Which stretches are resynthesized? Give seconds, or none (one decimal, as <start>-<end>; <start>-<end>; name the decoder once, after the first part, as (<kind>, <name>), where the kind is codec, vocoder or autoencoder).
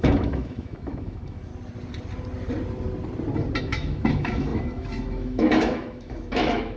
0.0-1.5 (autoencoder, DAC-VAE); 3.6-6.8